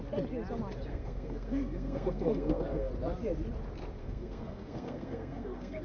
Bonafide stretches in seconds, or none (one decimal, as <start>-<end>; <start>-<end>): 0.0-0.9; 2.9-4.0